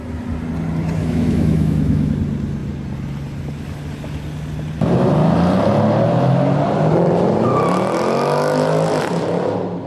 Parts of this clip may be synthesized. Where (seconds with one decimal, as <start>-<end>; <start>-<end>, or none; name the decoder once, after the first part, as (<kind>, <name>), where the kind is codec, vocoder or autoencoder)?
1.0-2.1 (autoencoder, DAC-VAE)